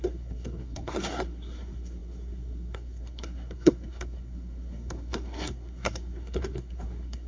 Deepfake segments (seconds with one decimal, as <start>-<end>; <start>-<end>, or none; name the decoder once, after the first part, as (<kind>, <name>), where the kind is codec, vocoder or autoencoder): 0.0-7.3 (codec, SNAC)